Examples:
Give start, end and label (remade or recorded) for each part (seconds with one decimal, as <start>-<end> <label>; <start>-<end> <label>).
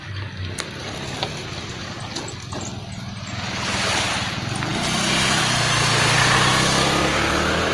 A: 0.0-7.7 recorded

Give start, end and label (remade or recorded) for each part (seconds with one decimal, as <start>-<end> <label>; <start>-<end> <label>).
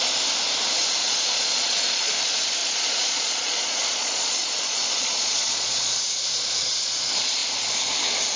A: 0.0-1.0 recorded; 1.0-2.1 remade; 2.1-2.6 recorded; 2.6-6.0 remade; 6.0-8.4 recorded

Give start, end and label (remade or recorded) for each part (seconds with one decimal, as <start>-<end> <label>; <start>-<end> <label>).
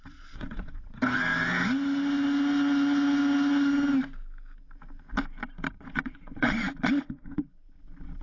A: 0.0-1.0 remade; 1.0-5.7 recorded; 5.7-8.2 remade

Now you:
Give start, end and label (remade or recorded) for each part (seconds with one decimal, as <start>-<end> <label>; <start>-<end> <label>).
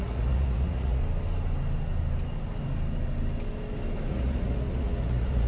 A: 0.0-1.0 remade; 1.0-4.1 recorded; 4.1-5.5 remade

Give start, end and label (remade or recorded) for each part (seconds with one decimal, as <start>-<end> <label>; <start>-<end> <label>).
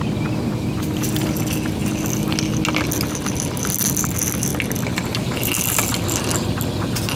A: 0.0-7.2 recorded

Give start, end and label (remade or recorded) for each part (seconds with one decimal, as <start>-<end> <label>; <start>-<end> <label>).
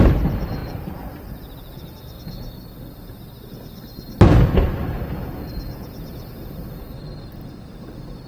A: 0.0-0.6 recorded; 0.6-1.9 remade; 1.9-8.3 recorded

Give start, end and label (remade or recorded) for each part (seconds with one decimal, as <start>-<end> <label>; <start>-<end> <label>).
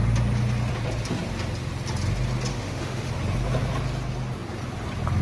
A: 0.0-2.5 recorded; 2.5-3.1 remade; 3.1-5.2 recorded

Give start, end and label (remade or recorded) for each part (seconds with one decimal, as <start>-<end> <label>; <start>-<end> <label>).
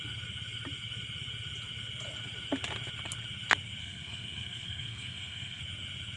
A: 0.0-3.8 recorded; 3.8-5.6 remade; 5.6-6.2 recorded